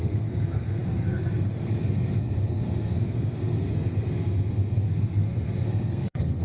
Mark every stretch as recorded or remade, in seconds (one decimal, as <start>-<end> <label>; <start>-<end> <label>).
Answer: 0.0-6.4 remade